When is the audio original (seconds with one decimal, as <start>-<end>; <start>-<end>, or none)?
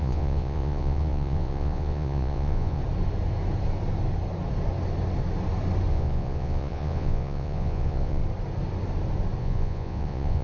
2.8-5.9; 8.2-9.4